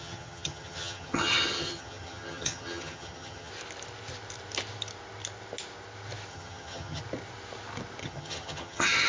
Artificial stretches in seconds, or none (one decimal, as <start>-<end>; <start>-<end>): 0.0-3.5; 6.3-7.0; 8.0-9.1